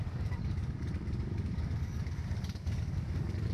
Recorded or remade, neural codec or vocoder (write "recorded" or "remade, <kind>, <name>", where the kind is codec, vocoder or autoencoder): remade, codec, DAC